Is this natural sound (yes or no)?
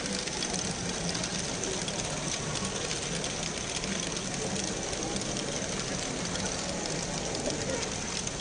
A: yes